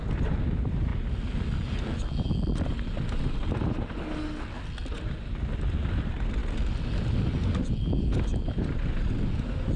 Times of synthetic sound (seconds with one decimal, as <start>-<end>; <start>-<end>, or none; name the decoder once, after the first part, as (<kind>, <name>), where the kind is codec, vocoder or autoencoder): none

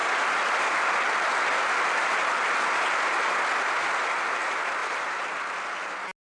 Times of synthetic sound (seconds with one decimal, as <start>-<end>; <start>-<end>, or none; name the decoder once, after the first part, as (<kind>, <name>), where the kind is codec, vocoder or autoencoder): 4.8-5.4 (vocoder, BigVGAN v2)